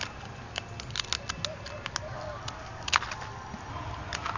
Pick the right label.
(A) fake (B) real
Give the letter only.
B